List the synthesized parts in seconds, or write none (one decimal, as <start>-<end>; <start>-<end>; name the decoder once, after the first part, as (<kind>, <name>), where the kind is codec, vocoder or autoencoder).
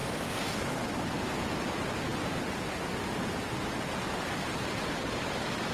none